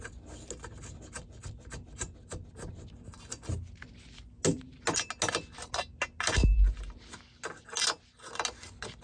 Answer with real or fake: real